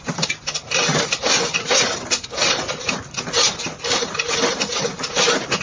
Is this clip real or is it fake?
real